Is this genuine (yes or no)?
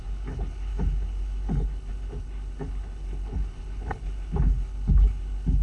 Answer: no